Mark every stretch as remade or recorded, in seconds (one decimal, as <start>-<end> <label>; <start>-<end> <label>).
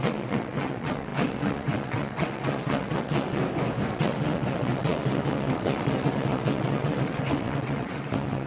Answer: 0.0-3.4 remade; 3.4-3.9 recorded; 3.9-8.5 remade